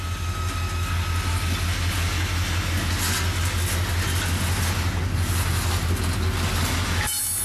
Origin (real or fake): real